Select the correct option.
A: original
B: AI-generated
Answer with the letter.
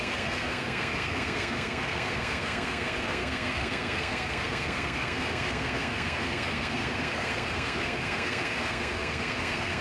B